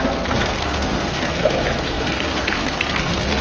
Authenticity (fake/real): fake